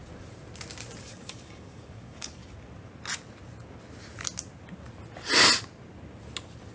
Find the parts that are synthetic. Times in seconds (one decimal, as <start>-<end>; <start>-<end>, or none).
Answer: 1.0-2.4